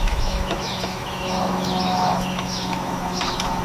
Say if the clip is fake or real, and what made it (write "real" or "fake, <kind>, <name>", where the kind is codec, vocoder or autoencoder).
fake, autoencoder, DAC-VAE